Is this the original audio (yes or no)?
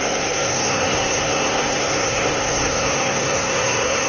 no